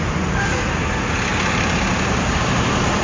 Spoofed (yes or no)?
no